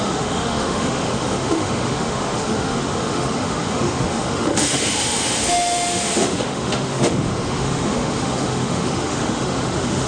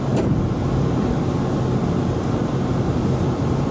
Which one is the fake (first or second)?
first